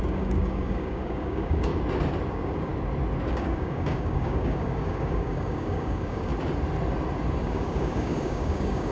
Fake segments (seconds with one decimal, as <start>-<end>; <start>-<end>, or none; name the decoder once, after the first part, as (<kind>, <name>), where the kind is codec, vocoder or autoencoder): 0.0-1.7 (codec, DAC); 2.3-2.7; 3.3-6.3; 7.4-8.9